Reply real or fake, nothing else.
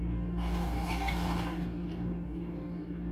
fake